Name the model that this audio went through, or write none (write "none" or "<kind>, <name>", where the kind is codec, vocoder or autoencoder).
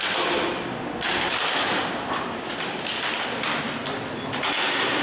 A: none